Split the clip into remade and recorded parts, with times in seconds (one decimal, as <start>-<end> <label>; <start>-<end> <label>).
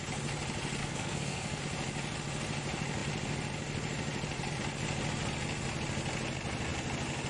0.0-0.8 recorded; 0.8-1.6 remade; 1.6-7.3 recorded